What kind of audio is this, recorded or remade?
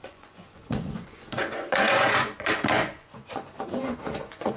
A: remade